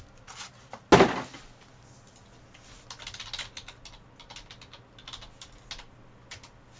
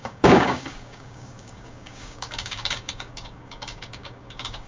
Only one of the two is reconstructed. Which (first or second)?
second